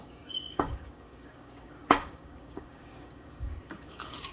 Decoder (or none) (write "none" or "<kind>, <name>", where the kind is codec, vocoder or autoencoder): codec, DAC